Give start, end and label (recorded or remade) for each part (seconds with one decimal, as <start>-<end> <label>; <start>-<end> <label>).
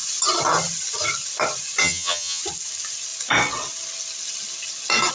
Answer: 0.0-1.8 recorded; 1.8-2.4 remade; 2.4-5.1 recorded